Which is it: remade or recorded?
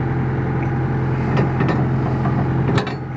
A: recorded